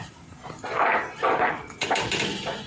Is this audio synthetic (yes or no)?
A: no